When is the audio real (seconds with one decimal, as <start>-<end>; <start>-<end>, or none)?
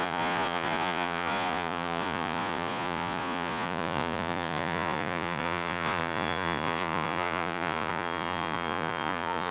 none